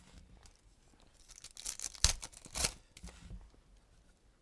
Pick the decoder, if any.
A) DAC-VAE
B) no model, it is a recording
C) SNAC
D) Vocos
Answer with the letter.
B